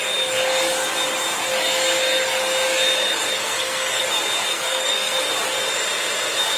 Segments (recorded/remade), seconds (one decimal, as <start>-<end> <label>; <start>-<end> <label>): 0.0-3.4 recorded; 3.4-4.0 remade; 4.0-4.5 recorded; 4.5-5.2 remade; 5.2-6.6 recorded